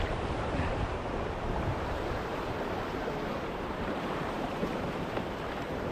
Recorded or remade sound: remade